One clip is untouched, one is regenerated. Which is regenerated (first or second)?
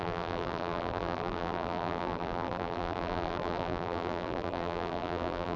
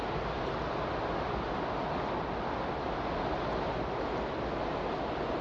first